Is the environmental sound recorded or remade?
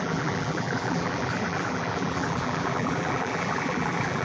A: remade